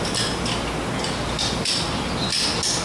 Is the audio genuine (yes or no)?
yes